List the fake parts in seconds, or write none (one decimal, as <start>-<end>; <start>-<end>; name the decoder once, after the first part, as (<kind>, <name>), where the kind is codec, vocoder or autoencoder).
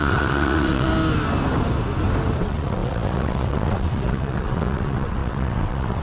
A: 0.0-0.9 (vocoder, WaveNeXt); 2.4-6.0